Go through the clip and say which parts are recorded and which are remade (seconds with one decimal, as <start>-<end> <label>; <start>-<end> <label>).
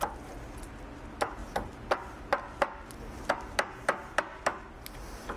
0.0-5.4 recorded